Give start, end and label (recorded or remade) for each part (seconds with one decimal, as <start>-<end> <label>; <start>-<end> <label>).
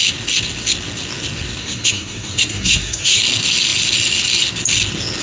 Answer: 0.0-1.6 recorded; 1.6-3.2 remade; 3.2-5.2 recorded